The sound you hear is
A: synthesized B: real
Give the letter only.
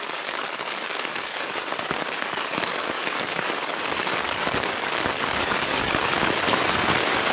A